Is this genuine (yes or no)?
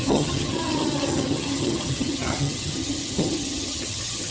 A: no